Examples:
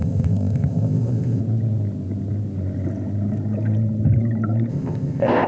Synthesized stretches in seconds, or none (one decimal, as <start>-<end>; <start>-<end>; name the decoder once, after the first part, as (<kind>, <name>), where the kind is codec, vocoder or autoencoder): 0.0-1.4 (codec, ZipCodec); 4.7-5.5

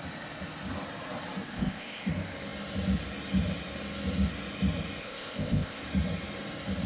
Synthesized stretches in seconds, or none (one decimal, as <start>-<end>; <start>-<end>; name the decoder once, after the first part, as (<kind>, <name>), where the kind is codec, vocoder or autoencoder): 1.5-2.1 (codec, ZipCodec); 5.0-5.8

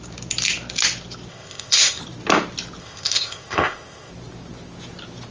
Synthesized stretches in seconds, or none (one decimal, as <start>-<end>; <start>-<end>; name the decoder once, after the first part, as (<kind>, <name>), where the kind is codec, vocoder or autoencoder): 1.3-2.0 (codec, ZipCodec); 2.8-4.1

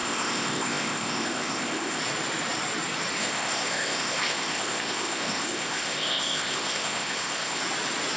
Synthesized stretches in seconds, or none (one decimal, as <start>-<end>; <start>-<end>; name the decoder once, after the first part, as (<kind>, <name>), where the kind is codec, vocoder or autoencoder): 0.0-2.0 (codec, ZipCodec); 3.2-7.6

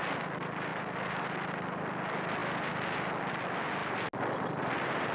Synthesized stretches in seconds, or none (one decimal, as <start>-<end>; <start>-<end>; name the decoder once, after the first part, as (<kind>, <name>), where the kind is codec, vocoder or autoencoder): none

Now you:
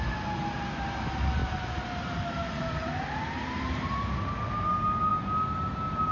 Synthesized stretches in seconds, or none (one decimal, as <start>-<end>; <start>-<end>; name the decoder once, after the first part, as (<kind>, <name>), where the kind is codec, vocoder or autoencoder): none

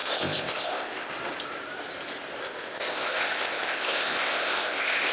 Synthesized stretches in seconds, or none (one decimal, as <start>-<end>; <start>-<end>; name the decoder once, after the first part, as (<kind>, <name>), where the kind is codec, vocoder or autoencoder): 0.0-1.1 (codec, ZipCodec); 2.4-5.1